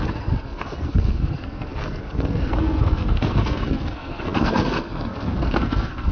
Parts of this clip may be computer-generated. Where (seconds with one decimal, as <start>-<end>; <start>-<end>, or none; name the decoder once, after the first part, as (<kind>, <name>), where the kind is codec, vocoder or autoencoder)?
0.0-6.1 (codec, SNAC)